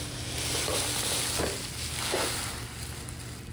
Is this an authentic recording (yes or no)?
yes